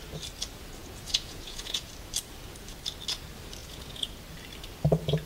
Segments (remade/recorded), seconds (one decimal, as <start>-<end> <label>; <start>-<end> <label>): 0.0-0.8 recorded; 0.8-1.9 remade; 1.9-3.6 recorded; 3.6-4.2 remade; 4.2-5.3 recorded